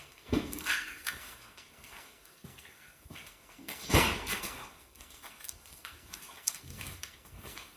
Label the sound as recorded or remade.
remade